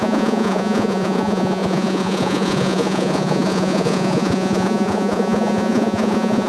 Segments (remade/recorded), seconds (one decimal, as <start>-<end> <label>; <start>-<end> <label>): 0.0-6.5 remade